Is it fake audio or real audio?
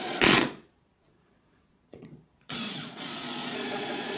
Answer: fake